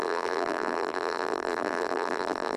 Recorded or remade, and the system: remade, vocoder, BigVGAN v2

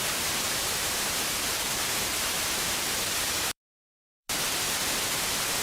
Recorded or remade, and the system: remade, vocoder, BigVGAN v2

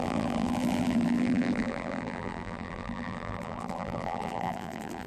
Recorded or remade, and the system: remade, vocoder, BigVGAN v2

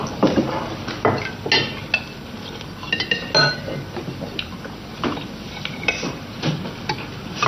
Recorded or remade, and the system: recorded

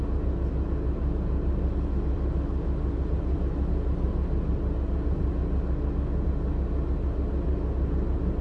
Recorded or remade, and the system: recorded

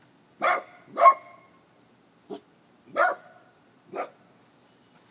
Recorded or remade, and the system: recorded